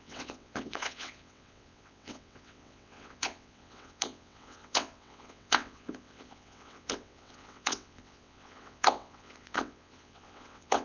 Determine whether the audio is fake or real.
fake